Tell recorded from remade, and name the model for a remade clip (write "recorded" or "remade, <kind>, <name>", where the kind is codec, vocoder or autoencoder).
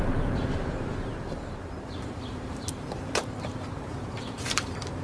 remade, vocoder, BigVGAN v2